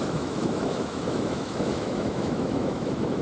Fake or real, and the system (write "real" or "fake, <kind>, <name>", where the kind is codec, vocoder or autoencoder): fake, autoencoder, DAC-VAE